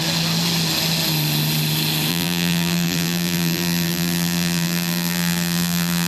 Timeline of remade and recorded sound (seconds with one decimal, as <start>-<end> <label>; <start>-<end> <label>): 0.0-2.1 recorded; 2.1-6.1 remade